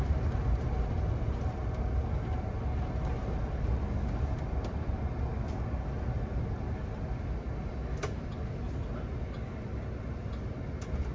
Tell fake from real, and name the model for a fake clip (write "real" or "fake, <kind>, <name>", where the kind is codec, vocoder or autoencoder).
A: real